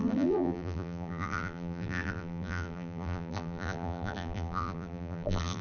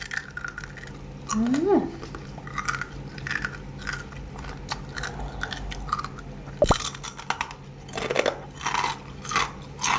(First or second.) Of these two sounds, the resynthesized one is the first